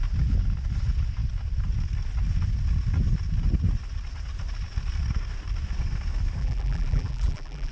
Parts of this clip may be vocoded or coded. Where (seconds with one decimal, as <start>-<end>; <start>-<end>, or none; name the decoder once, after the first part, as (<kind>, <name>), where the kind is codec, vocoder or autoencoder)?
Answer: 6.4-7.7 (vocoder, BigVGAN v2)